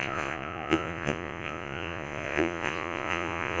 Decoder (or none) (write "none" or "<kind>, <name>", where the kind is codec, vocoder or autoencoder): vocoder, Vocos